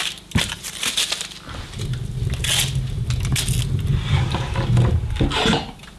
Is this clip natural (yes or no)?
yes